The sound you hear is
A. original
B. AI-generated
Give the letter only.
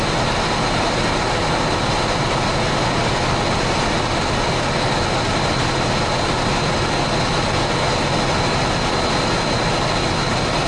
A